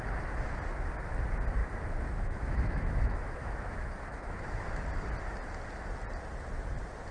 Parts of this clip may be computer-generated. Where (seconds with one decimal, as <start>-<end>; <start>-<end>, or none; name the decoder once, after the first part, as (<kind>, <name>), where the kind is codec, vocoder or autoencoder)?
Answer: 1.6-4.8 (autoencoder, DAC-VAE)